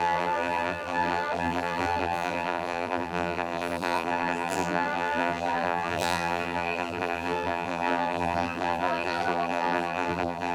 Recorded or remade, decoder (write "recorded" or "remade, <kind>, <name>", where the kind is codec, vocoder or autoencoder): remade, vocoder, BigVGAN v2